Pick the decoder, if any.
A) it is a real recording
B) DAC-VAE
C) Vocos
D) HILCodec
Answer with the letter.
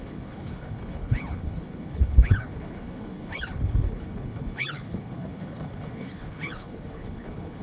D